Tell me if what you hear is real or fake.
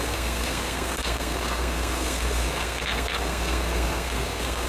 fake